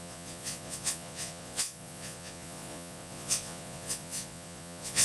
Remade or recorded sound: remade